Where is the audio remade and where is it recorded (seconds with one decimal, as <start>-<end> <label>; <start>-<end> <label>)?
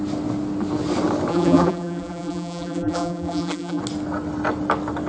0.0-1.3 recorded; 1.3-3.8 remade; 3.8-5.1 recorded